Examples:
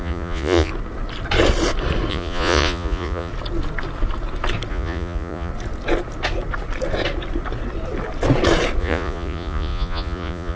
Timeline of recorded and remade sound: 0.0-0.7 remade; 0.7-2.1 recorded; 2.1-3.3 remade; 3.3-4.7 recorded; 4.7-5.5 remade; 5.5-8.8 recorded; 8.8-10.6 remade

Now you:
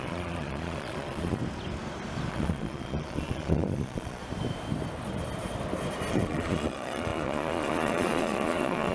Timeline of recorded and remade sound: 0.0-1.4 remade; 1.4-2.3 recorded; 2.3-4.2 remade; 4.2-6.1 recorded; 6.1-8.9 remade

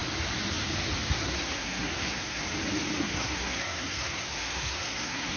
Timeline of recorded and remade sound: 0.0-1.1 recorded; 1.1-2.4 remade; 2.4-3.0 recorded; 3.0-5.4 remade

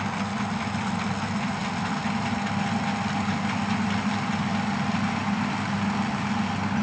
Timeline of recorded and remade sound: 0.0-6.8 recorded

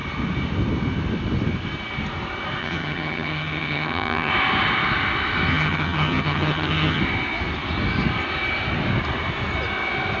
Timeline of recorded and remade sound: 0.0-2.6 recorded; 2.6-4.3 remade; 4.3-5.5 recorded; 5.5-7.0 remade; 7.0-10.2 recorded

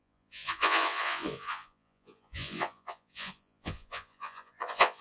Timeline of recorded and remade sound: 0.0-5.0 remade

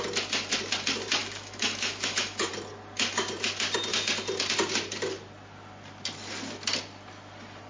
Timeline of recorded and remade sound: 0.0-1.2 recorded; 1.2-2.5 remade; 2.5-7.7 recorded

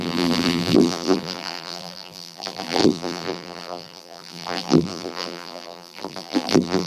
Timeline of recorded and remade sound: 0.0-6.9 remade